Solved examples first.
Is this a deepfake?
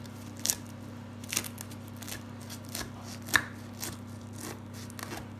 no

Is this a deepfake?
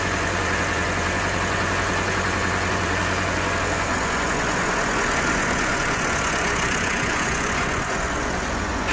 yes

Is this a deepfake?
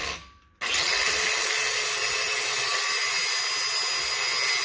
no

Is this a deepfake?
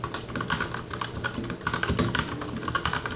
no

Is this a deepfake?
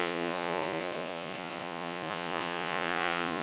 yes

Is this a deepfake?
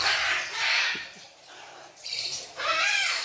yes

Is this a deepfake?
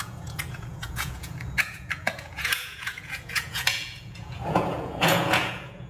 yes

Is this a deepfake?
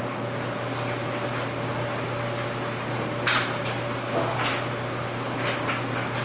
no